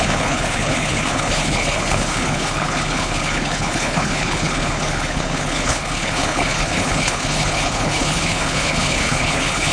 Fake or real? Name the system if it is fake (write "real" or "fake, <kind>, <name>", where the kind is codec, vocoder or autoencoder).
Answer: fake, codec, HILCodec